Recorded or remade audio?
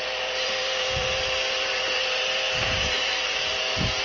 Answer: remade